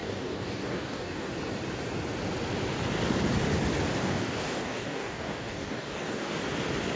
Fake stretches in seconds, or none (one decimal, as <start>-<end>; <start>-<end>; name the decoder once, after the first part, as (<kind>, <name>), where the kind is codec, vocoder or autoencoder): 0.0-1.3 (codec, DAC); 4.0-6.3